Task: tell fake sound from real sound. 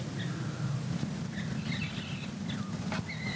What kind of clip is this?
real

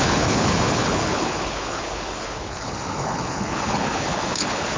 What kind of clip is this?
fake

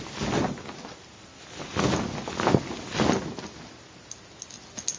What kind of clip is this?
real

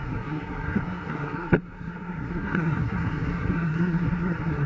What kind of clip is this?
fake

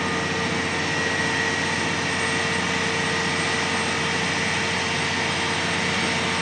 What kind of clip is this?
real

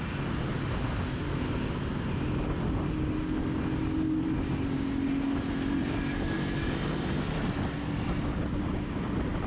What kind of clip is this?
real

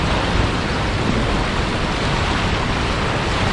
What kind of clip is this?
real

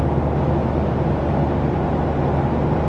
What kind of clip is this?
real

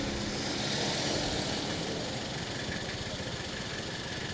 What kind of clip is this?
real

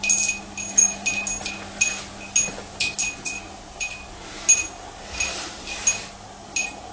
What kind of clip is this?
real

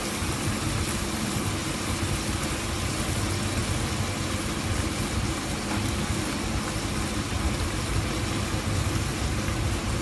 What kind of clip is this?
real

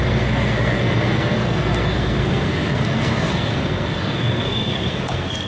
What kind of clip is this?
fake